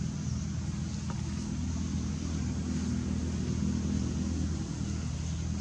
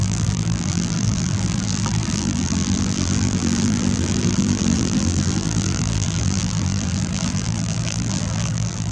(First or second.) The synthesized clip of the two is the second